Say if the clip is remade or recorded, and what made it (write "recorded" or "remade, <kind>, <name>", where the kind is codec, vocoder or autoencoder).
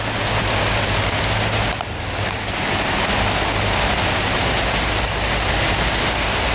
recorded